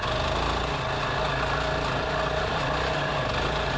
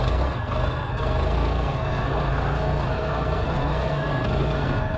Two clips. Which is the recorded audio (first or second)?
first